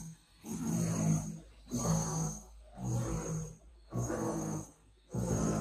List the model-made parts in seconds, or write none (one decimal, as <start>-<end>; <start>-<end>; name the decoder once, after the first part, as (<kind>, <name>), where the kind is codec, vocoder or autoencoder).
0.0-0.7 (codec, SNAC); 1.8-2.8; 3.7-5.6